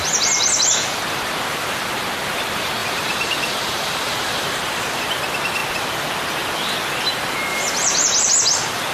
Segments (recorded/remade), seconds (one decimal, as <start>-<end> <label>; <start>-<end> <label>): 0.0-2.8 recorded; 2.8-5.1 remade; 5.1-7.5 recorded; 7.5-8.3 remade; 8.3-8.9 recorded